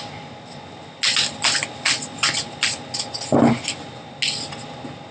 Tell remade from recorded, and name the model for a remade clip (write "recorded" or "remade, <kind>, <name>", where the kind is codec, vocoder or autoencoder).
recorded